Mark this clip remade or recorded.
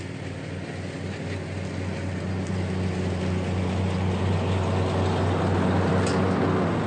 recorded